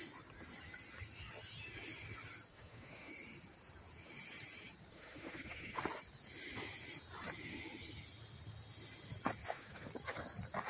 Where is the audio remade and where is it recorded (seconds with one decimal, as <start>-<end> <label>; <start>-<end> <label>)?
0.0-2.5 recorded; 2.5-3.1 remade; 3.1-4.9 recorded; 4.9-5.8 remade; 5.8-9.4 recorded; 9.4-9.9 remade; 9.9-10.7 recorded